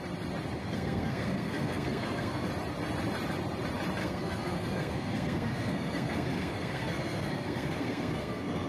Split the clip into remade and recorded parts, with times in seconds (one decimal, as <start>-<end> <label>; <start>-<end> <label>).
0.0-0.6 recorded; 0.6-2.5 remade; 2.5-4.0 recorded; 4.0-8.7 remade